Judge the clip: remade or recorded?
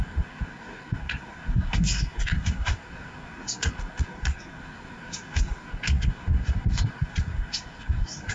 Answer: remade